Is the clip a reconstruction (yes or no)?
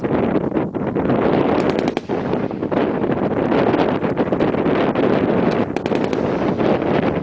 no